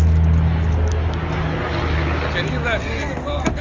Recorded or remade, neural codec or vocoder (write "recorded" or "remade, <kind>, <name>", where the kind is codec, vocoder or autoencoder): recorded